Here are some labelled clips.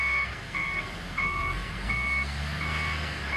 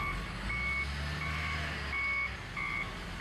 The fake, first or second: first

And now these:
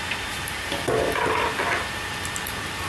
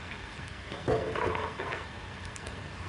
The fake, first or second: second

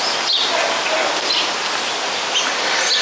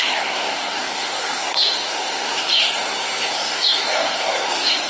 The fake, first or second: second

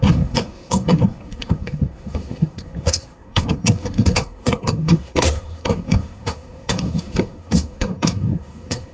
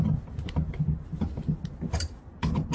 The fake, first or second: first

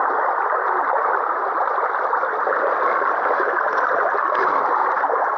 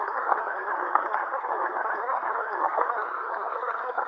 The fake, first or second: second